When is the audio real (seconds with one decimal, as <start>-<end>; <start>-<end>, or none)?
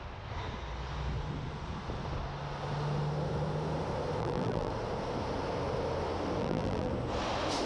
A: 0.0-4.2; 4.7-6.4; 6.9-7.7